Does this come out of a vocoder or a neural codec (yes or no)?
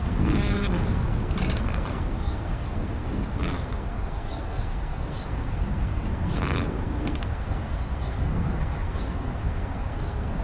yes